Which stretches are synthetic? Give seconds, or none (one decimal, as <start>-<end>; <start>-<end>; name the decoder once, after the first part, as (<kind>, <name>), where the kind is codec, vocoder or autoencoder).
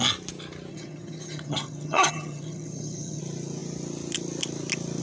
0.7-3.2 (vocoder, HiFi-GAN)